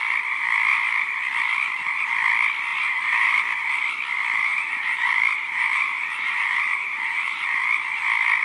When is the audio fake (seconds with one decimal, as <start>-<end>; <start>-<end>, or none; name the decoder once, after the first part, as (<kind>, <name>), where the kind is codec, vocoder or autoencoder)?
4.5-7.6 (vocoder, BigVGAN v2)